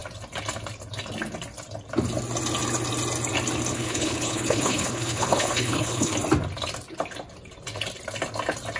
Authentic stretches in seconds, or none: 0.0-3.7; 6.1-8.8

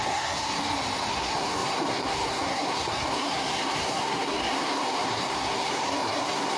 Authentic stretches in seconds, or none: 0.6-1.1

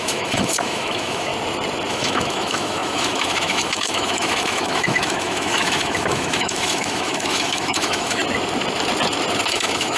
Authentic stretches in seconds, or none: 1.3-1.9; 8.2-9.5

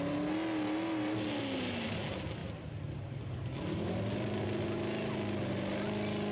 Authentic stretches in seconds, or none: 0.0-6.3

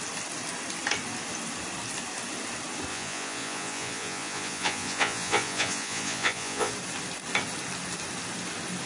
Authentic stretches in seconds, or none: 0.0-2.9; 6.7-8.9

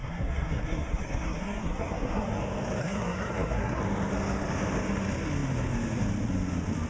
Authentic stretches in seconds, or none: 2.4-2.8; 3.8-6.9